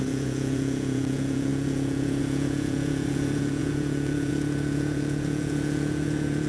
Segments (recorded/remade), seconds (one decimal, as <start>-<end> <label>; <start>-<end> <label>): 0.0-6.5 remade